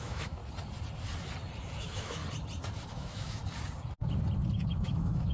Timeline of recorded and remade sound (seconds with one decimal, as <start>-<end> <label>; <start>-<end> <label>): 0.0-0.4 remade; 0.4-1.8 recorded; 1.8-2.2 remade; 2.2-2.9 recorded; 2.9-3.4 remade; 3.4-4.7 recorded; 4.7-5.3 remade